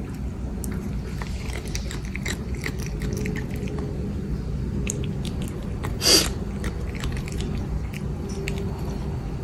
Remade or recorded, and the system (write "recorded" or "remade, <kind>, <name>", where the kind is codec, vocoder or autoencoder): recorded